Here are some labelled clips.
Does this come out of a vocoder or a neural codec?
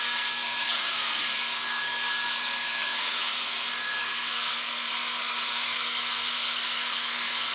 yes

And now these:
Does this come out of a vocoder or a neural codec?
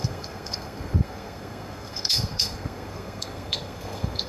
yes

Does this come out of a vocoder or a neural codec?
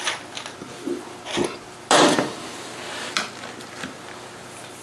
no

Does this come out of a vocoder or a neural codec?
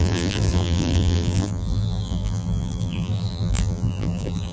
yes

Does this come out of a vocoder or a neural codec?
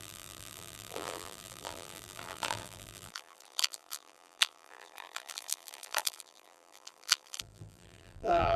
yes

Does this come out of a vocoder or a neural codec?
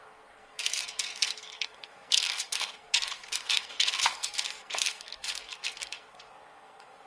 yes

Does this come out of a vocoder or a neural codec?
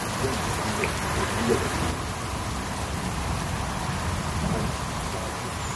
no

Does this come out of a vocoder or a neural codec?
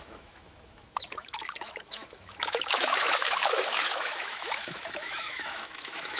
yes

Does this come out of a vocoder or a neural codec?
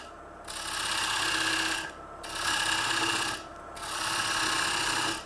no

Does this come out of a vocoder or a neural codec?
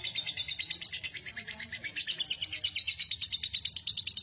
no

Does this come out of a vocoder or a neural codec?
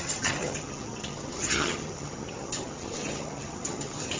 yes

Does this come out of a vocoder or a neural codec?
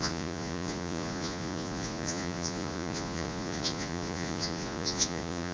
yes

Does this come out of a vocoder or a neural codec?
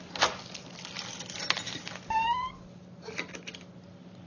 no